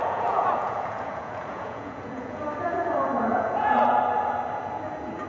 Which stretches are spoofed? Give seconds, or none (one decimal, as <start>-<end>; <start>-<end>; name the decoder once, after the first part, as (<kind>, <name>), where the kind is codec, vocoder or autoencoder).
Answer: 0.0-2.4 (vocoder, Vocos); 3.3-4.0